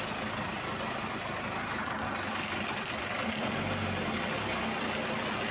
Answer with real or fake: real